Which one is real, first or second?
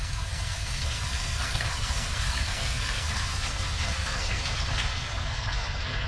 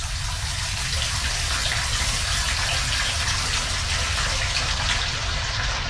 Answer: second